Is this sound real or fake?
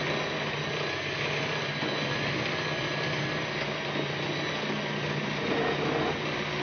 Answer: real